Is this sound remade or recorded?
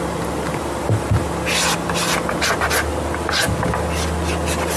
recorded